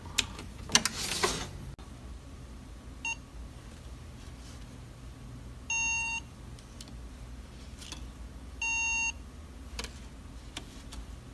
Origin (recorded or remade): recorded